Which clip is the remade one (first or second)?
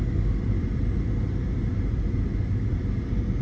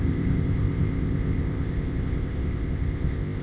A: second